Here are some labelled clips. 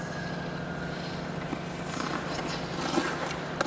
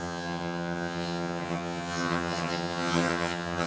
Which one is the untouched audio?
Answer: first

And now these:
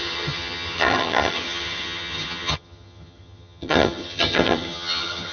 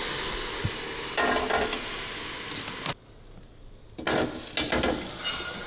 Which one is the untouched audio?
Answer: second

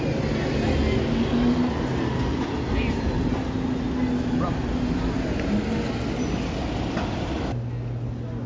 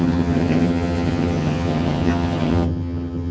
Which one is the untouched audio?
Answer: first